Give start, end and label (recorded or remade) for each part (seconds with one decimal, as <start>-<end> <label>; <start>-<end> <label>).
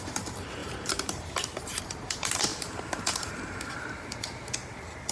0.0-4.6 remade; 4.6-5.1 recorded